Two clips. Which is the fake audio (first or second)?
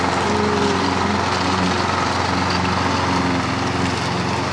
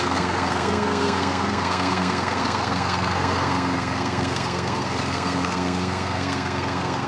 second